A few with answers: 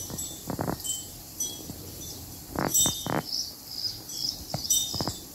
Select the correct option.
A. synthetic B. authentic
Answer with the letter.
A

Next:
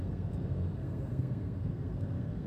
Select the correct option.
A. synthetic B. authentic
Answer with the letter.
A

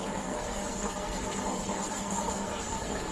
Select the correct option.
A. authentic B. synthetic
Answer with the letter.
B